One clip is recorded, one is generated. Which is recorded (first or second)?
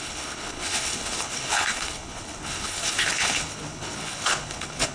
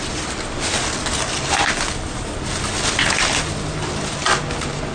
second